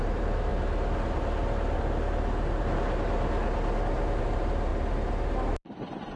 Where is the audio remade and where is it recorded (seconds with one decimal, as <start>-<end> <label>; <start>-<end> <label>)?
0.0-0.5 remade; 0.5-4.2 recorded; 4.2-4.7 remade; 4.7-5.5 recorded; 5.5-6.2 remade